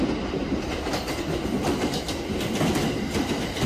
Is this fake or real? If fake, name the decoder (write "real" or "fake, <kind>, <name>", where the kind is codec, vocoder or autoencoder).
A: real